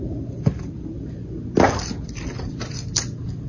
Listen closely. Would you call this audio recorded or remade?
recorded